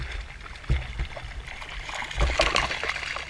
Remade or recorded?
recorded